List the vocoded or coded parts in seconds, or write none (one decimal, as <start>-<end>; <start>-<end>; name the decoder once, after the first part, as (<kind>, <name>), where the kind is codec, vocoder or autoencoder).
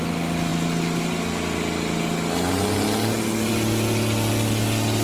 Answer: none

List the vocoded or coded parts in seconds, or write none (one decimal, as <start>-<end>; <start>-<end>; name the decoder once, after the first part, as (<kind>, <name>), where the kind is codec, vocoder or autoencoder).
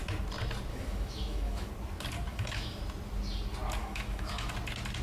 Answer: 0.7-1.7 (autoencoder, DAC-VAE); 2.3-2.8; 3.8-4.5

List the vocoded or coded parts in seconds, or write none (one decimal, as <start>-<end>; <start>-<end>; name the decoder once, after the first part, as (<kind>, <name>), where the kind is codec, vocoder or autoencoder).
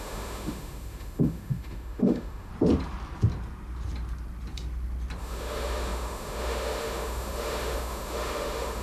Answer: 0.0-2.5 (autoencoder, DAC-VAE); 5.2-8.8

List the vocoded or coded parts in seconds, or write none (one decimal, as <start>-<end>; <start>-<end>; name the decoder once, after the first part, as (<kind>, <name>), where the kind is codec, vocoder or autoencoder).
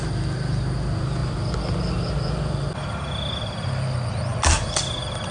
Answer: none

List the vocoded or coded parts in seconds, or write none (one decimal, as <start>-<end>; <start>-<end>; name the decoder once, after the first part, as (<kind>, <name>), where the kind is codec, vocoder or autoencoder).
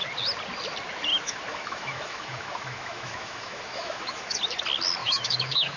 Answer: 1.1-4.4 (autoencoder, DAC-VAE); 5.0-5.8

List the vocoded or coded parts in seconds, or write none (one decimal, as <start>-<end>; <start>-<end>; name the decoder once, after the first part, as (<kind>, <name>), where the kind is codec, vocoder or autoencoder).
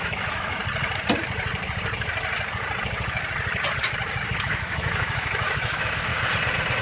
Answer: 0.0-0.6 (autoencoder, DAC-VAE); 4.4-6.1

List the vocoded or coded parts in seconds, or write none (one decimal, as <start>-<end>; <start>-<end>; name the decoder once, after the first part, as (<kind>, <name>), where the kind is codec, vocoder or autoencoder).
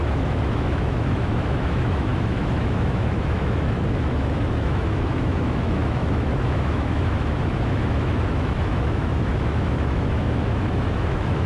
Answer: 0.0-11.5 (autoencoder, DAC-VAE)